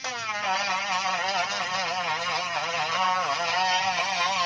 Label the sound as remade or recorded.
recorded